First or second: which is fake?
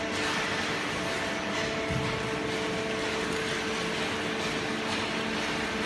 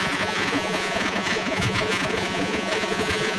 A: second